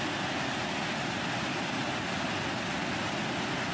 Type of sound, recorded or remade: recorded